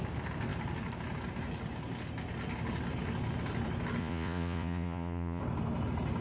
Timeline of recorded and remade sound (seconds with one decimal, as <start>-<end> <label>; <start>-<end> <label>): 0.0-4.0 recorded; 4.0-5.4 remade; 5.4-6.2 recorded